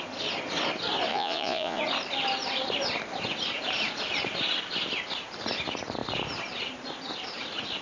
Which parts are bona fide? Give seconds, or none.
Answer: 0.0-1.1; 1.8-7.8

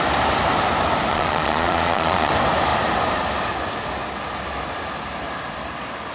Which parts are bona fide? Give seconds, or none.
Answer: 0.0-1.1; 2.3-6.1

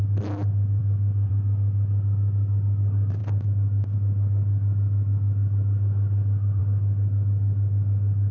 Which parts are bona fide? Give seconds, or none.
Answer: 0.0-8.3

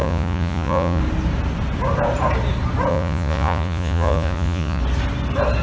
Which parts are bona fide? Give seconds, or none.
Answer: 1.0-2.9; 4.8-5.6

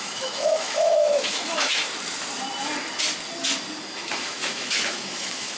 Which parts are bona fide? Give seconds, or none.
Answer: 1.8-3.8

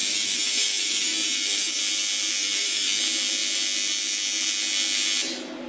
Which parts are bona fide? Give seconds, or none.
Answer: 1.8-2.4; 3.0-5.7

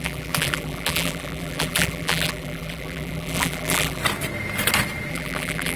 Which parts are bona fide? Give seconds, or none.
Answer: 4.0-5.1